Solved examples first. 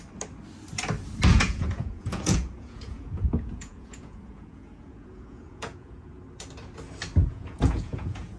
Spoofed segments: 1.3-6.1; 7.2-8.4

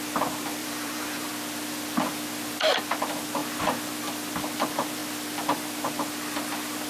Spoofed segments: 0.6-1.3

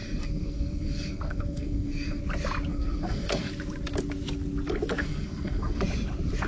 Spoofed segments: 0.0-2.2; 2.7-3.5; 5.0-5.8

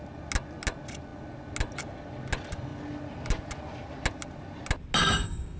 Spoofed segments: 5.0-5.6

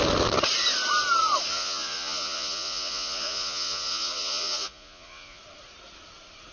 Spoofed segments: 1.5-5.4

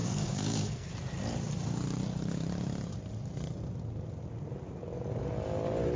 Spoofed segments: 0.0-0.9

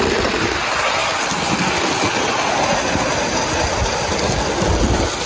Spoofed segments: none

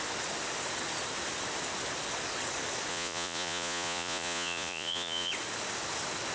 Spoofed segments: 2.9-5.3